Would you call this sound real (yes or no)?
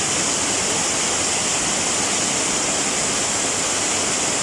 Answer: yes